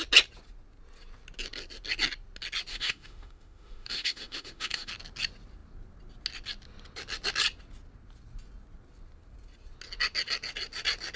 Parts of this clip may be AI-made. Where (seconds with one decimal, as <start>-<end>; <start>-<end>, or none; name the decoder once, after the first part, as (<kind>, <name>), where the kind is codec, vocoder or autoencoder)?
2.7-4.9 (autoencoder, DAC-VAE)